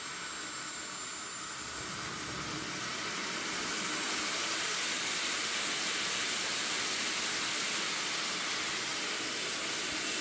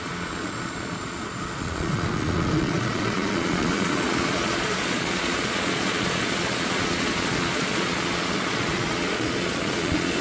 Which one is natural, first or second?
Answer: first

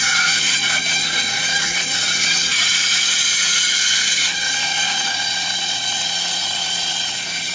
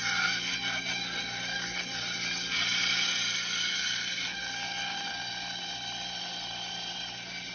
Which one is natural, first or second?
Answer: second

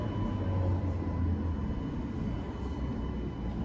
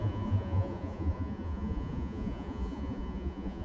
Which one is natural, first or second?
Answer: first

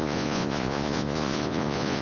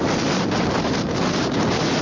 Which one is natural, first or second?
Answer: second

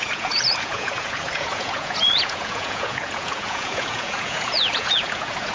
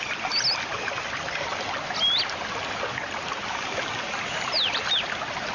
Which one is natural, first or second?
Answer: second